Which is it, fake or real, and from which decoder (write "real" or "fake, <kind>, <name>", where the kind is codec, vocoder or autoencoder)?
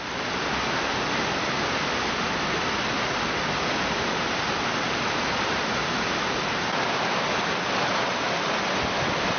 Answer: real